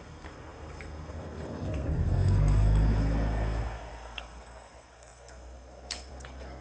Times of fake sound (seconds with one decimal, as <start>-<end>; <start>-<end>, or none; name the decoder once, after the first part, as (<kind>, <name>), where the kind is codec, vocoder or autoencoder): 0.0-6.6 (codec, SNAC)